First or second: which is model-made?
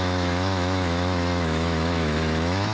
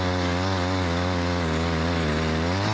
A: first